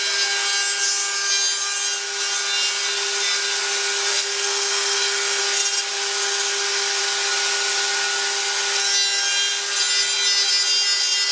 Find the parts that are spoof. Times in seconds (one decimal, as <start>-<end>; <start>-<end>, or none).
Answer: 4.1-5.4